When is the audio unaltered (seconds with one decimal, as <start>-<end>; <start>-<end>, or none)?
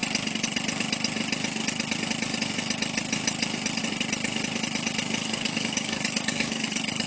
0.0-5.2